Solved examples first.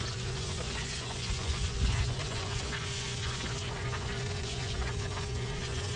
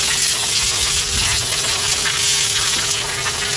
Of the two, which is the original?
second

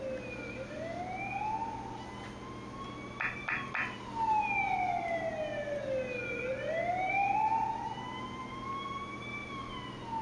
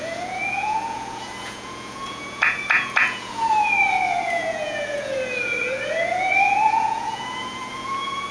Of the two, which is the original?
first